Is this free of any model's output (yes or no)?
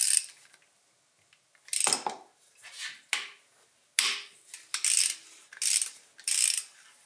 yes